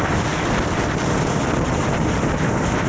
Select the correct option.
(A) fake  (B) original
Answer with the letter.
B